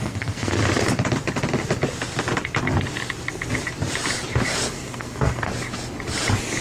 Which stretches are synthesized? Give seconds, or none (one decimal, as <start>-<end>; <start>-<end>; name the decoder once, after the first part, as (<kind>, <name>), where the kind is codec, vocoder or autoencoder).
0.0-0.6 (codec, SNAC); 4.6-5.5